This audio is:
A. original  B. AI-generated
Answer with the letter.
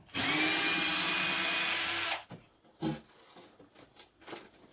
A